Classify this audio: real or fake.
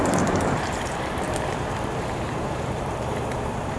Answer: fake